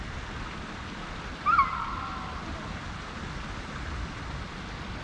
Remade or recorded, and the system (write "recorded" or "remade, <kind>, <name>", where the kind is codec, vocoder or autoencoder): recorded